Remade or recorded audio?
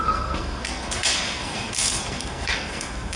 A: remade